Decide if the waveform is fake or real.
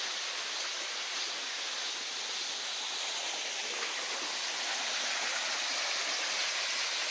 real